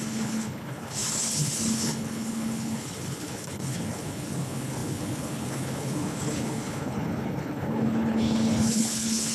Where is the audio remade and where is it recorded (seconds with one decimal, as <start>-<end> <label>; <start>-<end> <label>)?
0.0-9.3 remade

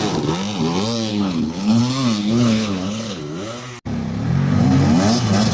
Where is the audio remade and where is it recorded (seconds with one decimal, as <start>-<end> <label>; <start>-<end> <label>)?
0.0-1.1 recorded; 1.1-1.8 remade; 1.8-2.2 recorded; 2.2-3.2 remade; 3.2-5.5 recorded

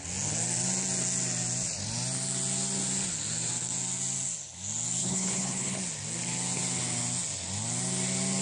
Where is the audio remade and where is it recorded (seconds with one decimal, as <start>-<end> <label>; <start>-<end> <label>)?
0.0-5.0 recorded; 5.0-5.8 remade; 5.8-8.4 recorded

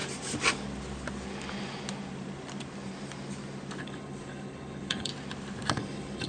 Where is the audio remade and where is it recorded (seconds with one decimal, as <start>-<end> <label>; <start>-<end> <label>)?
0.0-3.8 recorded; 3.8-5.1 remade; 5.1-5.7 recorded; 5.7-6.3 remade